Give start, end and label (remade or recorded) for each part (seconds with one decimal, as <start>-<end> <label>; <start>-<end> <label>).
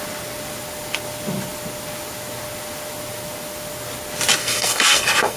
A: 0.0-4.4 recorded; 4.4-5.4 remade